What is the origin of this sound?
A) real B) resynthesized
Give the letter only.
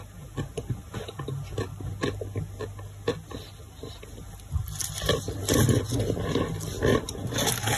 A